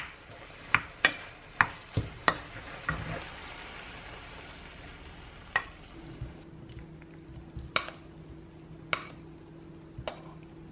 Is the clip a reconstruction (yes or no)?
no